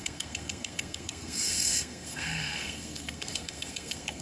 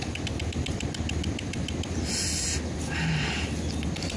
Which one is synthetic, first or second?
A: first